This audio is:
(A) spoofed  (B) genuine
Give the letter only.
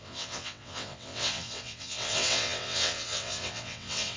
A